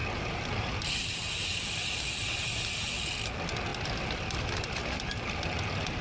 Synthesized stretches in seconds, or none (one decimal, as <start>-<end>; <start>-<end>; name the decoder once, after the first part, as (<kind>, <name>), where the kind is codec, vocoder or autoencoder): 0.0-1.6 (vocoder, BigVGAN v2); 3.7-5.2